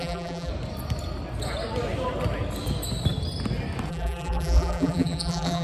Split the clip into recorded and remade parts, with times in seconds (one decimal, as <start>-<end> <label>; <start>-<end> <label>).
0.0-0.5 remade; 0.5-3.9 recorded; 3.9-5.6 remade